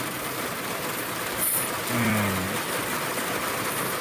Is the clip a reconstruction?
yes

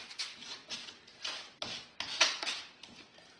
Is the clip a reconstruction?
no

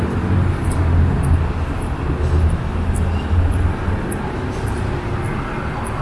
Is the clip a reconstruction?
no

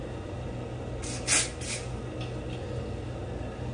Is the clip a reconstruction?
no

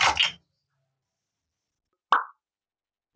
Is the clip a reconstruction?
no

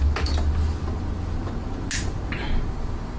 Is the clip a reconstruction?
no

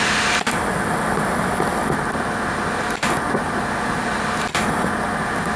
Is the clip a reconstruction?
no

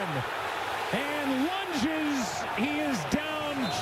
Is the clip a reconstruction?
no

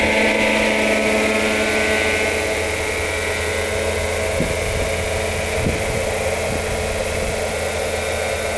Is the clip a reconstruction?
no